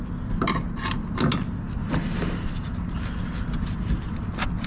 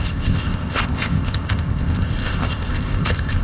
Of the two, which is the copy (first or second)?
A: second